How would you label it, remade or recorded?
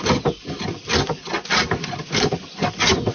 recorded